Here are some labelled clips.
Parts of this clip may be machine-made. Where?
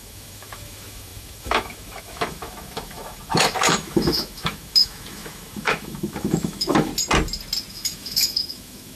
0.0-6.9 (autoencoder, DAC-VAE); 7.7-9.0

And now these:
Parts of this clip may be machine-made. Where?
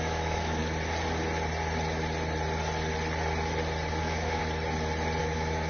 0.0-0.6 (autoencoder, DAC-VAE); 4.0-4.4; 5.2-5.7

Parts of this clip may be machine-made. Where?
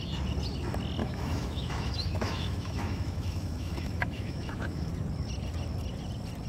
1.0-4.9 (autoencoder, DAC-VAE)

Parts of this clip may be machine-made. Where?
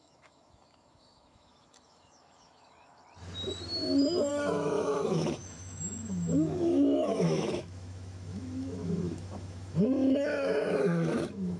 0.0-3.0 (autoencoder, DAC-VAE); 4.3-11.6